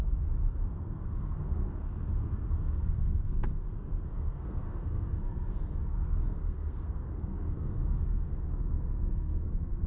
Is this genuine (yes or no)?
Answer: no